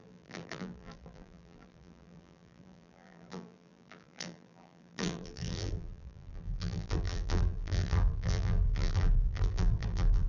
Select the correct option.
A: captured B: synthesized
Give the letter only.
B